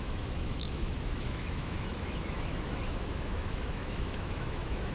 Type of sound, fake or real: fake